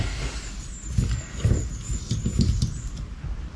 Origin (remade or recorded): recorded